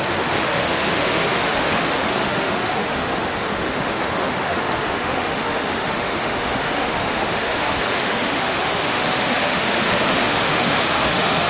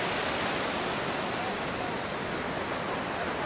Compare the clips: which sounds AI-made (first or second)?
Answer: first